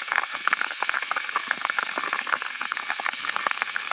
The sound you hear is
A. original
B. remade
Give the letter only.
B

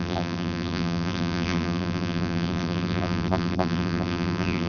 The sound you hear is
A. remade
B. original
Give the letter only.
A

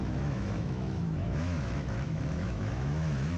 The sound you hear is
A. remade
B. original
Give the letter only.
A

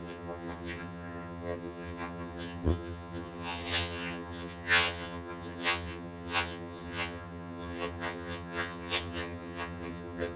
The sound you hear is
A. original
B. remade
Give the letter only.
B